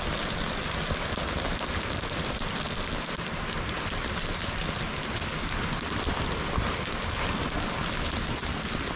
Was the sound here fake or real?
real